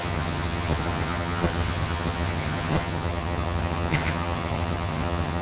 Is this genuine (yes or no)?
no